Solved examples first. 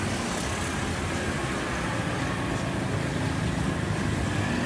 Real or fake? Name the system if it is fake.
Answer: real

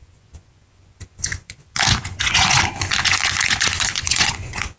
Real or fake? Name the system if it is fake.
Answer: fake, vocoder, Vocos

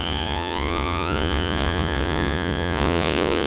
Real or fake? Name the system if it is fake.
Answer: fake, vocoder, Vocos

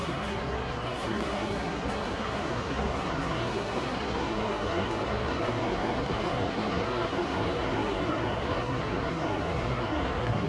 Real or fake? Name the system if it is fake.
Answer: fake, codec, SNAC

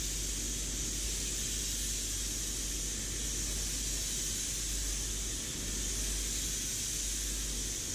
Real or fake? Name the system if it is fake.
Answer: real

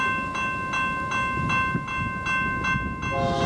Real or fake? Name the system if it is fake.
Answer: real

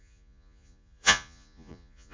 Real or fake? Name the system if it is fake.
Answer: fake, vocoder, Vocos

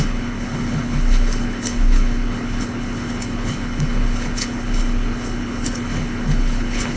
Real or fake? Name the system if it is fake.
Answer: fake, codec, HILCodec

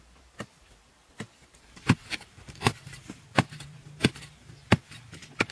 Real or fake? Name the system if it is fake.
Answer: fake, vocoder, BigVGAN v2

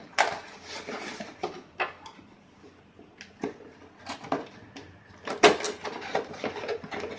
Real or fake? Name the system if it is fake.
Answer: real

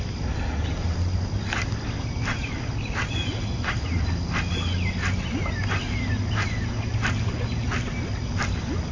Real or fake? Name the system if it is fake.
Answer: real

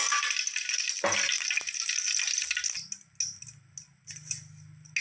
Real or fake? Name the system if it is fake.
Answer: real